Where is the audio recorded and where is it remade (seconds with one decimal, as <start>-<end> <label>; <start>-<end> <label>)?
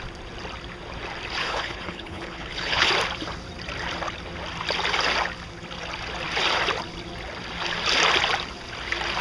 0.0-1.4 recorded; 1.4-2.9 remade; 2.9-9.2 recorded